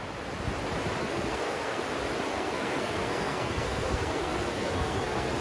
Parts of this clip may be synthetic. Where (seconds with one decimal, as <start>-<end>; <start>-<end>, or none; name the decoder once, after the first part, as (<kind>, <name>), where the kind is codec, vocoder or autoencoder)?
1.0-1.8 (codec, SNAC); 2.3-5.4